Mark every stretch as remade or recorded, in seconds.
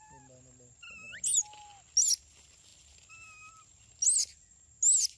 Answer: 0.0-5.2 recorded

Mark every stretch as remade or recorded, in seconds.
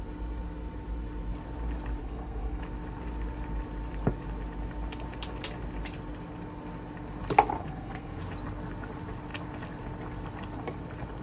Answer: 0.0-2.0 recorded; 2.0-2.6 remade; 2.6-7.6 recorded; 7.6-8.2 remade; 8.2-11.2 recorded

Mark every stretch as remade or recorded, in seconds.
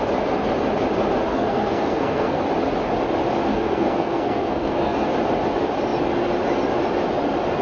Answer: 0.0-1.3 recorded; 1.3-2.4 remade; 2.4-3.5 recorded; 3.5-5.1 remade; 5.1-7.6 recorded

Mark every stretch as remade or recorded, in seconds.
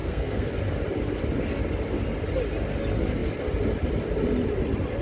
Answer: 0.0-0.5 remade; 0.5-5.0 recorded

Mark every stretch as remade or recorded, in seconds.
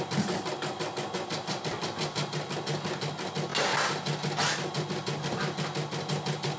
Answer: 0.0-6.6 recorded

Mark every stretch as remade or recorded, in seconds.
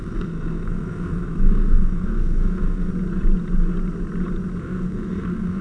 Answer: 0.0-2.9 remade; 2.9-4.6 recorded; 4.6-5.6 remade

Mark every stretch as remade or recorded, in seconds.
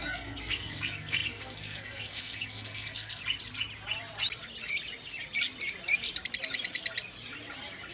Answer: 0.0-3.2 remade; 3.2-7.9 recorded